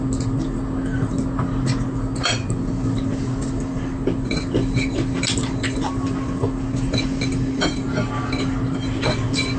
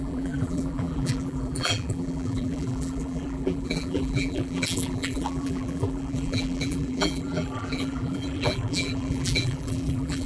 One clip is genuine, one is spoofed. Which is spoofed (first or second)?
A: second